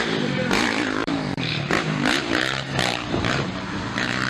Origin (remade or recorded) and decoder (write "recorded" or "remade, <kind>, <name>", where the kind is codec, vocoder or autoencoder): remade, vocoder, BigVGAN v2